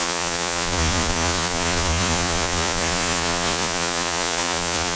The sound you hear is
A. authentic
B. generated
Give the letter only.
B